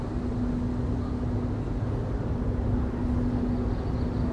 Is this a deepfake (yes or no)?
no